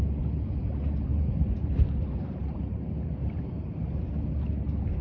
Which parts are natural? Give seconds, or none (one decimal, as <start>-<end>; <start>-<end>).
0.0-1.1; 4.1-5.0